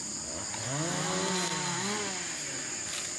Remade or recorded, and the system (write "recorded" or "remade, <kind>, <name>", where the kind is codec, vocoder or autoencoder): recorded